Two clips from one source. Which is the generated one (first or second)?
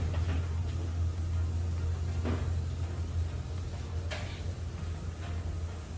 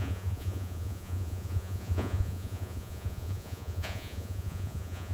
second